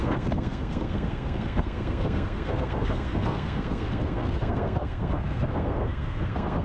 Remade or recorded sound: remade